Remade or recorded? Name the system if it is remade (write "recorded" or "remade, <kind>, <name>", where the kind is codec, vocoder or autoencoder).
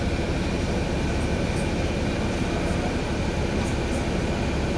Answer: recorded